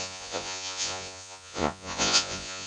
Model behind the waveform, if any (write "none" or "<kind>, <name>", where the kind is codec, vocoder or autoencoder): vocoder, Vocos